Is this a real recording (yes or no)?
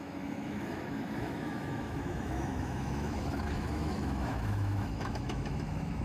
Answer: no